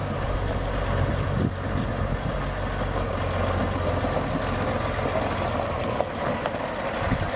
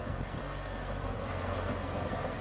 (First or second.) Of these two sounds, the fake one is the second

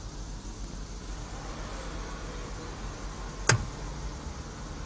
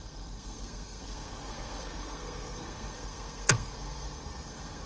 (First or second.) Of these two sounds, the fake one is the second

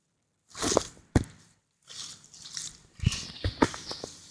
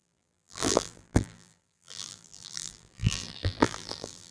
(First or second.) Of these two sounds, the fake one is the second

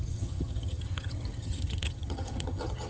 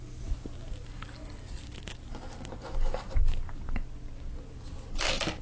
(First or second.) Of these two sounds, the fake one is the first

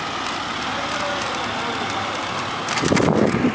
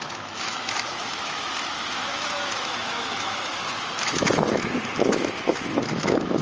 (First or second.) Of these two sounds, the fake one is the second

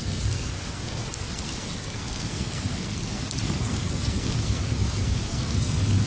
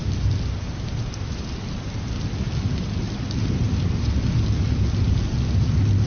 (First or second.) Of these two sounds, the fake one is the first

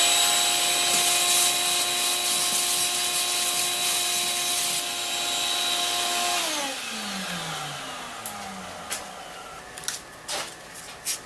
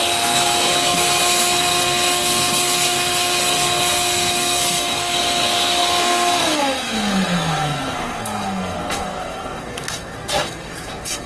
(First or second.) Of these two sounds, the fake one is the second